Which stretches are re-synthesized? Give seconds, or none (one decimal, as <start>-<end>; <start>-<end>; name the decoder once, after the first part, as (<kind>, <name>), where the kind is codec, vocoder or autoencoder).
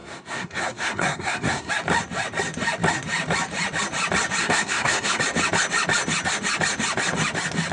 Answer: 0.0-1.7 (codec, SNAC); 4.4-5.2